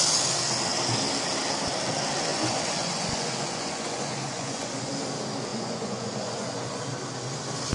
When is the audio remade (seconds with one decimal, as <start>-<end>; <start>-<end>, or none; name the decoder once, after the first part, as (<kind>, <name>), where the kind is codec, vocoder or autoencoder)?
2.3-4.9 (vocoder, Vocos); 5.5-6.8